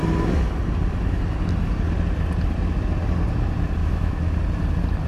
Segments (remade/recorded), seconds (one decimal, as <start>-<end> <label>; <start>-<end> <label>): 0.0-3.8 recorded; 3.8-4.3 remade; 4.3-5.1 recorded